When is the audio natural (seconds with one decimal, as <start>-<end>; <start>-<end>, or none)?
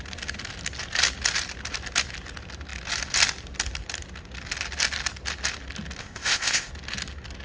0.0-6.0; 6.7-7.4